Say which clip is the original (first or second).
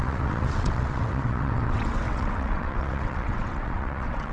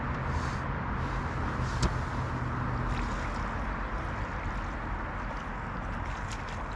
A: second